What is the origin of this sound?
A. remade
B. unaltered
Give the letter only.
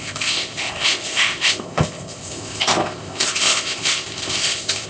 A